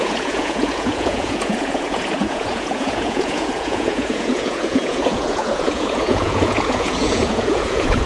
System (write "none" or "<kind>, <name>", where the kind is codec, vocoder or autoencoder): vocoder, Vocos